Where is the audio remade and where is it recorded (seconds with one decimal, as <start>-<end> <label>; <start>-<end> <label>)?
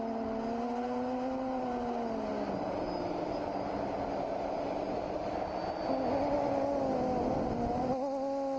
0.0-8.6 recorded